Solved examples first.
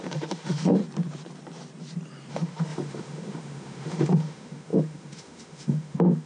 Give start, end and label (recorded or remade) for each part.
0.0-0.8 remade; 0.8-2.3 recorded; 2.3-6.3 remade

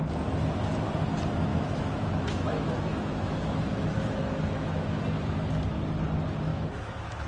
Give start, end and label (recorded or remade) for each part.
0.0-1.5 recorded; 1.5-5.0 remade; 5.0-6.5 recorded; 6.5-7.3 remade

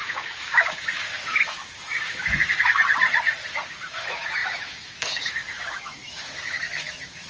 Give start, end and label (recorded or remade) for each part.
0.0-2.8 remade; 2.8-3.8 recorded; 3.8-7.3 remade

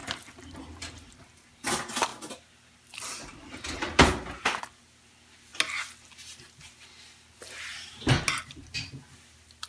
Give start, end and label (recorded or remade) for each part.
0.0-9.7 recorded